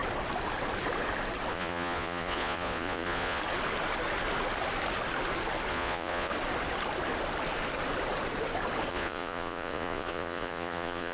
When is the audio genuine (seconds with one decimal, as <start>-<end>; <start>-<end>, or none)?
0.0-1.5; 3.4-5.7; 6.3-8.9